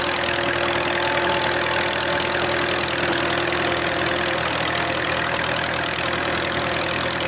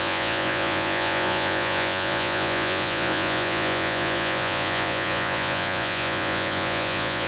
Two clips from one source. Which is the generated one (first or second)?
second